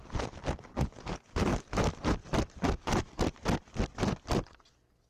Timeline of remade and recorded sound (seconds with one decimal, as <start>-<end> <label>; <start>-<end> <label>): 0.0-5.1 recorded

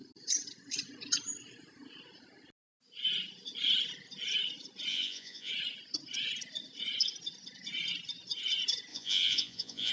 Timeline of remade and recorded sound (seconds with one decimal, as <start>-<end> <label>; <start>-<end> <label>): 0.0-4.9 recorded; 4.9-5.5 remade; 5.5-8.9 recorded; 8.9-9.9 remade

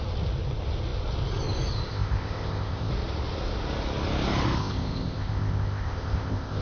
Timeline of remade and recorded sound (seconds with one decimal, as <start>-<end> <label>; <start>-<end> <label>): 0.0-1.9 recorded; 1.9-2.9 remade; 2.9-4.6 recorded; 4.6-6.6 remade

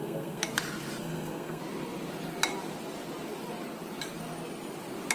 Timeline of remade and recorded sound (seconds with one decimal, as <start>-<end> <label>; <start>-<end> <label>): 0.0-0.4 remade; 0.4-1.0 recorded; 1.0-1.6 remade; 1.6-5.1 recorded

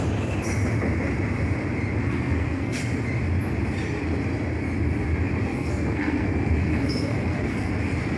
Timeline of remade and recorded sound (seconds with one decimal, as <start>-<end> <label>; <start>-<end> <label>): 0.0-2.0 recorded; 2.0-2.8 remade; 2.8-5.5 recorded; 5.5-7.7 remade; 7.7-8.2 recorded

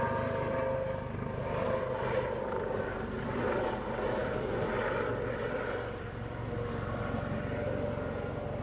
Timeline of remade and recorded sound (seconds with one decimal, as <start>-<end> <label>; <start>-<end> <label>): 0.0-4.2 recorded; 4.2-7.5 remade; 7.5-8.6 recorded